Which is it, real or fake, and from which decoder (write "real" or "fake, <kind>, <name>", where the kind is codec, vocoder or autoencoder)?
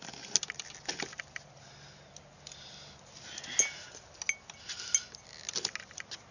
real